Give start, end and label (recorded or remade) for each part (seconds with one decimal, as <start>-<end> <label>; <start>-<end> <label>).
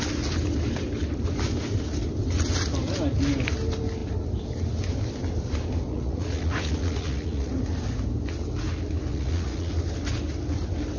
0.0-5.9 recorded; 5.9-7.5 remade; 7.5-9.1 recorded; 9.1-9.7 remade; 9.7-11.0 recorded